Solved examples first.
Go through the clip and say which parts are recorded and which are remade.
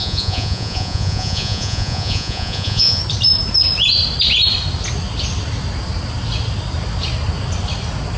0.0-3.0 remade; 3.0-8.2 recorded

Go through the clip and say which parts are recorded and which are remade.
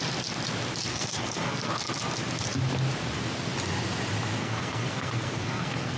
0.0-0.9 recorded; 0.9-1.7 remade; 1.7-4.4 recorded; 4.4-6.0 remade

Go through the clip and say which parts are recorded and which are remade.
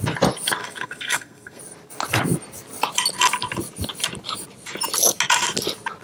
0.0-0.6 recorded; 0.6-1.6 remade; 1.6-6.0 recorded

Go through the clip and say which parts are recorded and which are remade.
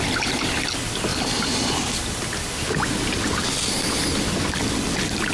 0.0-5.3 recorded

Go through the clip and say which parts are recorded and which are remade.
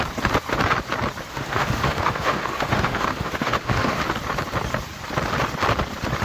0.0-1.3 recorded; 1.3-4.0 remade; 4.0-6.2 recorded